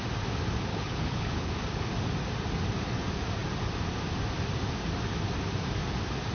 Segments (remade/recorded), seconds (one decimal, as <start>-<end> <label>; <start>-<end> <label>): 0.0-0.7 recorded; 0.7-1.5 remade; 1.5-6.3 recorded